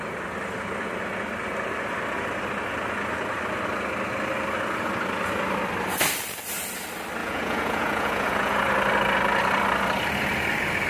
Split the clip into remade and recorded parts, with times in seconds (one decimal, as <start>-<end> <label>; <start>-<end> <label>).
0.0-7.2 recorded; 7.2-8.6 remade; 8.6-10.9 recorded